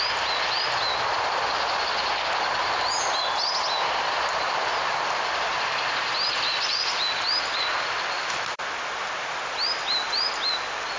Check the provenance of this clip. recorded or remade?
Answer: recorded